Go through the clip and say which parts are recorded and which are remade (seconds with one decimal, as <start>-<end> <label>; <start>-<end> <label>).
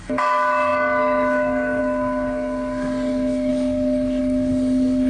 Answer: 0.0-5.1 remade